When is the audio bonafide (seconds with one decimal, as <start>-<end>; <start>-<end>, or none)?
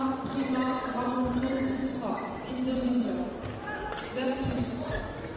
0.0-1.8; 5.0-5.4